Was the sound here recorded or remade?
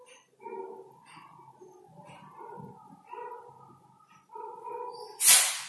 recorded